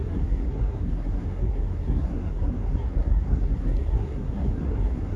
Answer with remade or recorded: remade